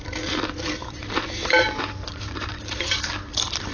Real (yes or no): no